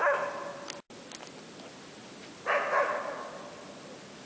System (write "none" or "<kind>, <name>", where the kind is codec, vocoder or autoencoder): none